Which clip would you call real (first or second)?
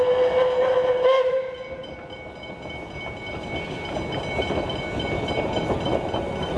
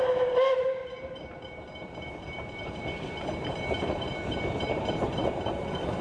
first